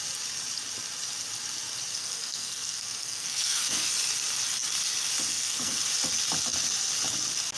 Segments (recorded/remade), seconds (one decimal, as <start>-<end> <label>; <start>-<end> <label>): 0.0-1.9 recorded; 1.9-3.9 remade; 3.9-5.3 recorded; 5.3-5.8 remade; 5.8-7.6 recorded